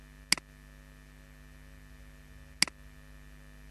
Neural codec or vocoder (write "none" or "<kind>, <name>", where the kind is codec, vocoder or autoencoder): none